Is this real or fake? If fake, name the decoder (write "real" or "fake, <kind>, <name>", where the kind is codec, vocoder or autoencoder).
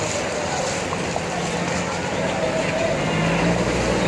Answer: real